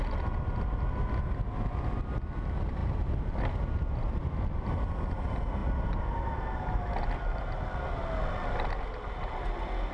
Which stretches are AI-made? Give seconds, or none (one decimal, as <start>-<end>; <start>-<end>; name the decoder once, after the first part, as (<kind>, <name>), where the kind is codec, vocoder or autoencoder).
none